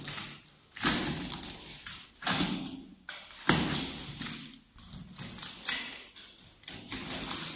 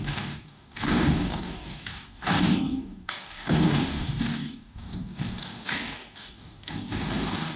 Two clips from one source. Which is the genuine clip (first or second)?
first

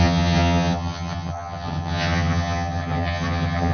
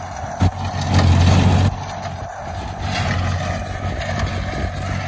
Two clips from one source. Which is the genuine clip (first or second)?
second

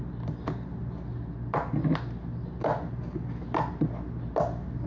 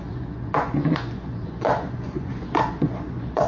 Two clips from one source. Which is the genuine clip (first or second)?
first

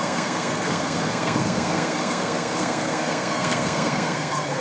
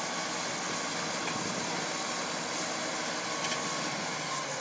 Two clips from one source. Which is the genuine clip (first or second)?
second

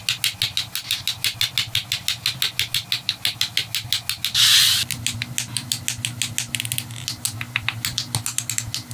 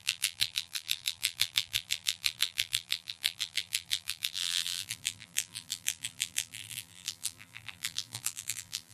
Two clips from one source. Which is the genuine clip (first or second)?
first